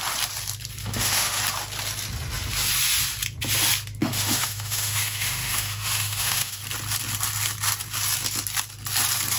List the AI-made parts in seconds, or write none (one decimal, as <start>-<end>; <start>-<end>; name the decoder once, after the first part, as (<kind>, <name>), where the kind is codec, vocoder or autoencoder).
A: 0.8-1.4 (autoencoder, DAC-VAE); 4.0-6.6